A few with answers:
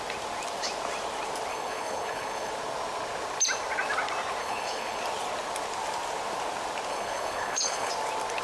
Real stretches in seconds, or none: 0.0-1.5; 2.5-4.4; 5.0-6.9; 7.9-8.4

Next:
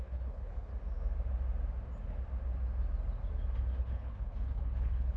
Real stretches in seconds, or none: 0.7-3.8

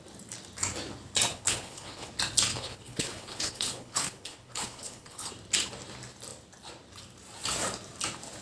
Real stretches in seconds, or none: 0.0-1.3; 2.1-2.5; 5.3-8.4